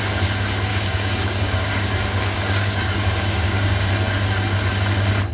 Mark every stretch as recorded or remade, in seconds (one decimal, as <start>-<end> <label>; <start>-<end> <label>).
0.0-0.7 recorded; 0.7-3.9 remade; 3.9-5.3 recorded

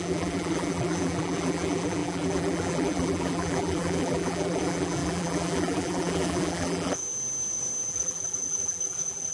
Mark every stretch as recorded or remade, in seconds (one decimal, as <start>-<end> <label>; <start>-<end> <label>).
0.0-7.0 remade; 7.0-7.9 recorded; 7.9-9.3 remade

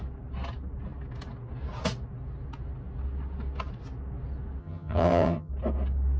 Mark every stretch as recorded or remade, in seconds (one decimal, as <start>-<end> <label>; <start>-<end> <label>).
0.0-4.6 recorded; 4.6-5.5 remade; 5.5-6.2 recorded